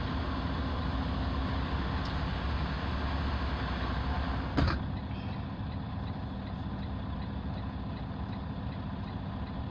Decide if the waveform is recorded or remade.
recorded